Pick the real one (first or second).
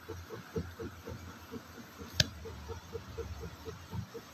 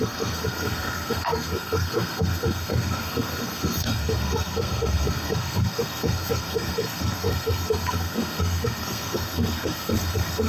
first